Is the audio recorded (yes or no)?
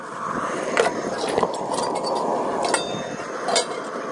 yes